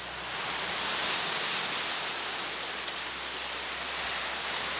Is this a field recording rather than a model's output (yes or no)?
yes